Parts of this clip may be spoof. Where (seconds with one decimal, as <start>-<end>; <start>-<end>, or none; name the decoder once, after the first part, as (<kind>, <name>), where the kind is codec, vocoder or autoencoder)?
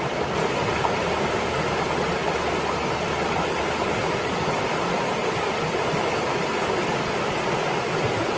none